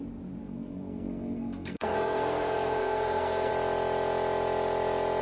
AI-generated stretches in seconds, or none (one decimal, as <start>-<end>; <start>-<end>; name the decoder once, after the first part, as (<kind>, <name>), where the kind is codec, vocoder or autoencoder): 0.4-3.5 (codec, SNAC)